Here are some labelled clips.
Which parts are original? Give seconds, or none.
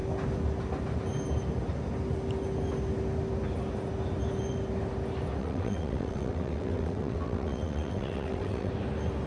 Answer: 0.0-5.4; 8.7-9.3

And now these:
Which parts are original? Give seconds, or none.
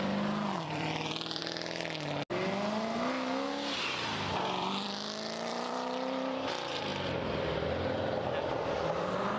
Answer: 1.4-4.3; 6.9-9.0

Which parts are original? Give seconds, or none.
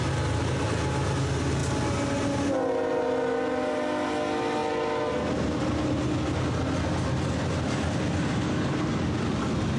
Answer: 0.0-9.8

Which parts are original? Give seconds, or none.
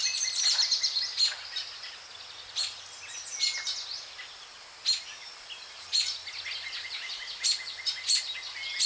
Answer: 0.0-8.9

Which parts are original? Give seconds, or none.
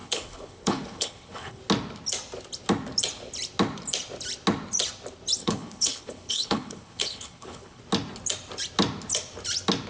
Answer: 1.6-5.4; 7.8-9.9